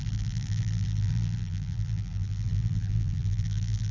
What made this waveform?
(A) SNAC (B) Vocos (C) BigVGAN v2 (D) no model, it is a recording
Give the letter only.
C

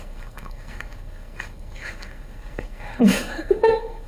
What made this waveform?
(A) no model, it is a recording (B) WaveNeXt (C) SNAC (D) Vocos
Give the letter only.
C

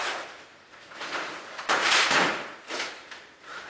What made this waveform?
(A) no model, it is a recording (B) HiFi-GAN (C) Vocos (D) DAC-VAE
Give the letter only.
C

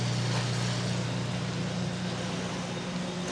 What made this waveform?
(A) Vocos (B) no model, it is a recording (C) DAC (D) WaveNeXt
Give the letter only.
B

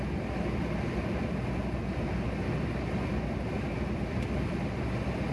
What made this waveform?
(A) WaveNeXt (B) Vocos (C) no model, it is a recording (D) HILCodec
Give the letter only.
C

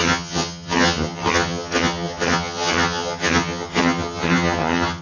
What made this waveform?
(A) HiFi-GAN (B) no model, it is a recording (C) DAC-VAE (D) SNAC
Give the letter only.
A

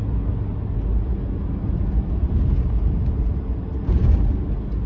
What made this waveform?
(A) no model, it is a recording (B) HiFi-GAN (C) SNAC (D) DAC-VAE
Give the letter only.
A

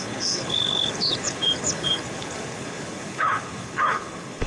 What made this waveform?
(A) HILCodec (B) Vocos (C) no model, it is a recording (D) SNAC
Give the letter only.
A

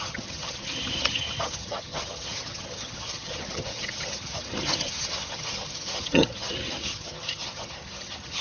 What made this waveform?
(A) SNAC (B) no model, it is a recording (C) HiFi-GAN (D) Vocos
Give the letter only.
C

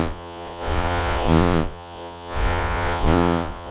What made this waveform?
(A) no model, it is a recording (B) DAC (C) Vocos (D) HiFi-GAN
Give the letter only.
C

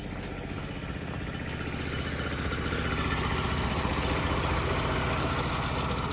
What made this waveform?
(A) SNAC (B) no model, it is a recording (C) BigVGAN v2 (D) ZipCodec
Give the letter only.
B